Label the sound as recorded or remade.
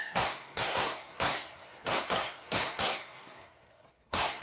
remade